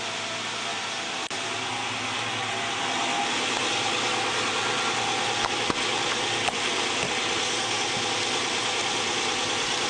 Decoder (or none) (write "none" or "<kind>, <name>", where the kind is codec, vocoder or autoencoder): none